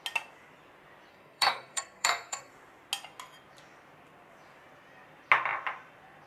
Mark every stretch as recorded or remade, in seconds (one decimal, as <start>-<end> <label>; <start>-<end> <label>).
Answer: 0.0-1.1 recorded; 1.1-2.5 remade; 2.5-6.3 recorded